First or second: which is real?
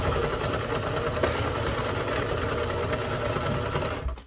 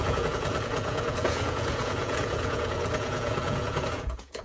first